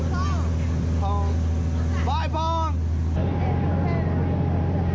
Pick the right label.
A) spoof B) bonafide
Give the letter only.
B